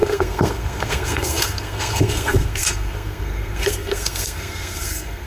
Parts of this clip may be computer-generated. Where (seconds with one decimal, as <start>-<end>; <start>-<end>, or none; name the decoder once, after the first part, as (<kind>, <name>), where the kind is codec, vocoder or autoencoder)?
0.0-5.3 (codec, SNAC)